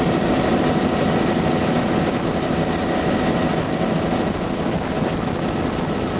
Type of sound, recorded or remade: recorded